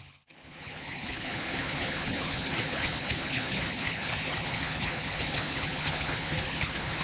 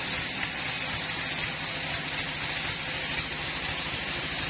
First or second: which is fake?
first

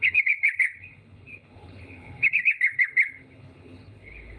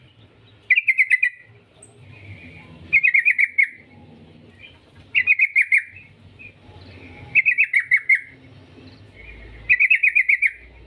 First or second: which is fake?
first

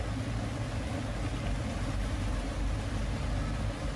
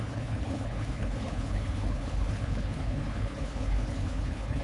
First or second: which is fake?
second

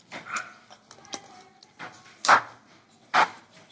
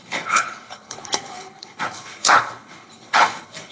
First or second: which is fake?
second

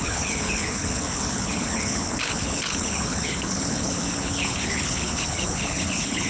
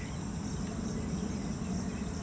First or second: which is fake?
first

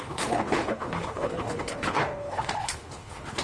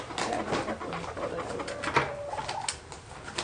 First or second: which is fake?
first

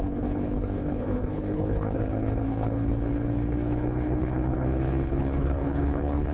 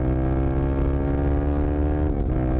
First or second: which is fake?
first